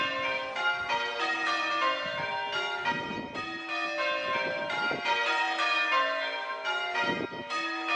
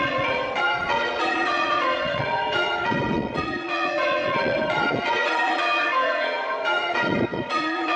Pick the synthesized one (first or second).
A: second